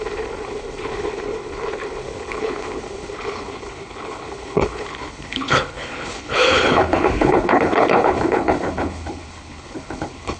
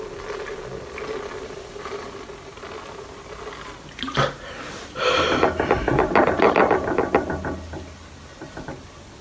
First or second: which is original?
second